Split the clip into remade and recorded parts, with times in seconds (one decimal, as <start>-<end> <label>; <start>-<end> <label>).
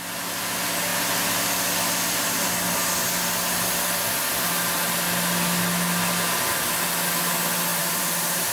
0.0-7.7 recorded; 7.7-8.5 remade